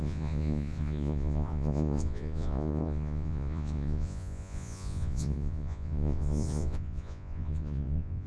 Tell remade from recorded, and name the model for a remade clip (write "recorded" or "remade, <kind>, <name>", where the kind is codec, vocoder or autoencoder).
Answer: remade, vocoder, Vocos